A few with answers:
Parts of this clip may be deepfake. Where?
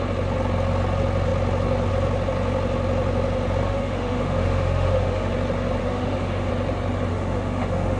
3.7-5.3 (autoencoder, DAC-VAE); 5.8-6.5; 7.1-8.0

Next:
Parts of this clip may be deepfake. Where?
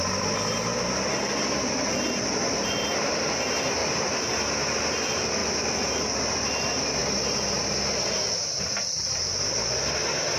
3.8-4.4 (vocoder, BigVGAN v2); 5.4-6.0; 7.0-9.2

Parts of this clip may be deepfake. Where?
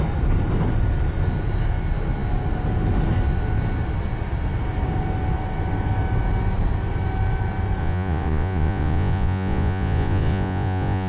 7.8-11.1 (vocoder, Vocos)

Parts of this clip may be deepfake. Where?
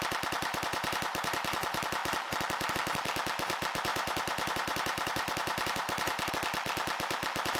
0.4-1.4 (vocoder, BigVGAN v2); 3.9-6.3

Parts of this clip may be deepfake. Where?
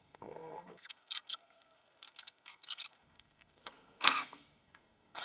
0.0-5.2 (codec, SNAC)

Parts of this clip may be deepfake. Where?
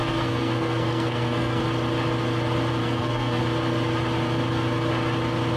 0.0-1.6 (codec, SNAC); 2.8-3.4